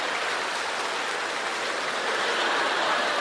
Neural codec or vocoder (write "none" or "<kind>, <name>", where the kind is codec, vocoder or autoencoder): none